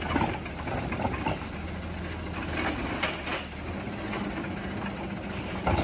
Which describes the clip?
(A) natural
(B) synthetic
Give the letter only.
A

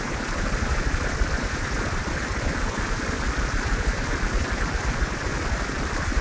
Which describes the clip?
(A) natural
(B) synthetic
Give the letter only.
A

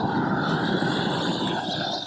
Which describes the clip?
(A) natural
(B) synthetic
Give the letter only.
A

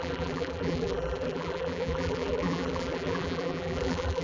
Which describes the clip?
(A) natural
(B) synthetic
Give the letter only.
B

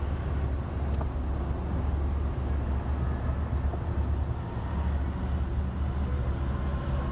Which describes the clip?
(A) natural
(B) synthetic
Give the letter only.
A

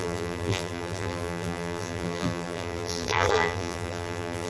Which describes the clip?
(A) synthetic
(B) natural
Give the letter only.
A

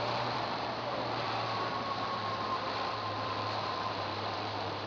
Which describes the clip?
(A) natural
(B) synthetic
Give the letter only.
B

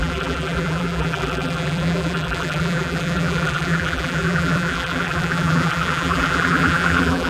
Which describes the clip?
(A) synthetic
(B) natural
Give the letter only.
A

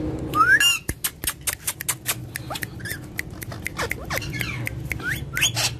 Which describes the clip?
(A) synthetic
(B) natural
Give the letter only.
B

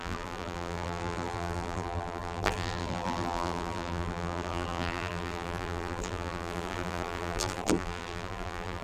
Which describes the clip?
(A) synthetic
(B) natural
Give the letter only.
A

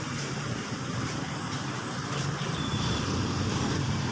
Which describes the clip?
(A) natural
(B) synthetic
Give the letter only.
B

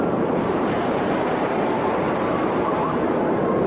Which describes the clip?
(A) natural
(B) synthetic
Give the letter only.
B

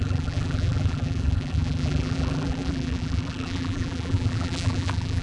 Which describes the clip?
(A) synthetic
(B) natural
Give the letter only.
A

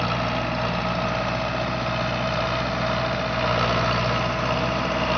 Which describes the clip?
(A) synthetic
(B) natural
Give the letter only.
B